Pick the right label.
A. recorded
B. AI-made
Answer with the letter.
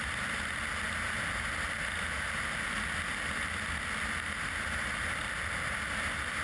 A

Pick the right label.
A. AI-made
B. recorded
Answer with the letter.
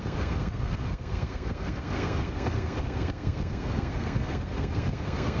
A